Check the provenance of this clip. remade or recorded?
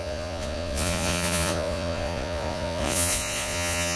remade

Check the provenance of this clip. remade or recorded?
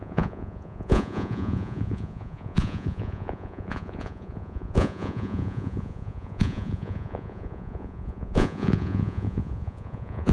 remade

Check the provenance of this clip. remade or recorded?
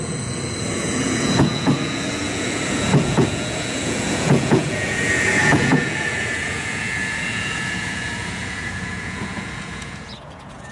remade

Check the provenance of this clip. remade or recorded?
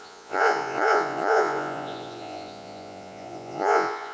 remade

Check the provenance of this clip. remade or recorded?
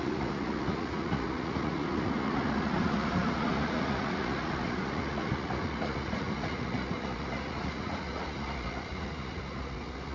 remade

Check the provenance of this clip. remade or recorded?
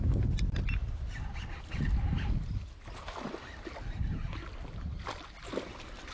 recorded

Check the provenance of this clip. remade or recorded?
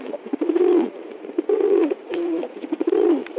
remade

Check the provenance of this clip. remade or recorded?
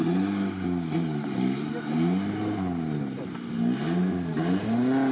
recorded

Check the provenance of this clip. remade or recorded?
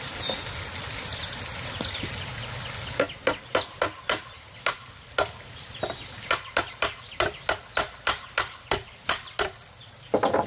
recorded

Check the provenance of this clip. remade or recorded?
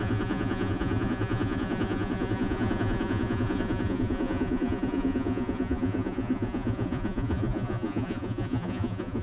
remade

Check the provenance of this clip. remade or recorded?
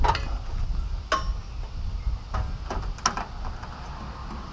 recorded